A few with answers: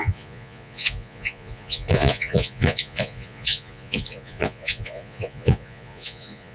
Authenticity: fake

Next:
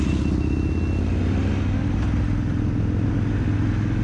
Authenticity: real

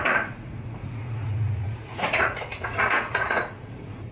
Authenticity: fake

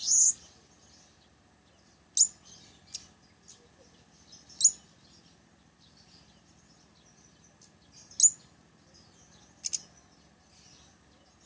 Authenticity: real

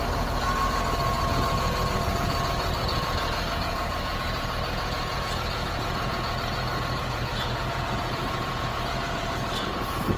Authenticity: fake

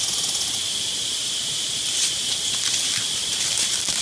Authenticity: real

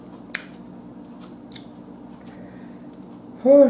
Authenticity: real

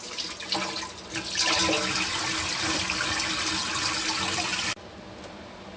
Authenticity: real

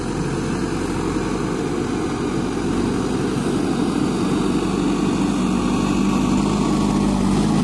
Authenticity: real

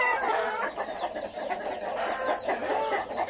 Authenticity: real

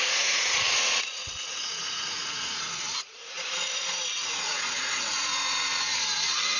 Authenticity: fake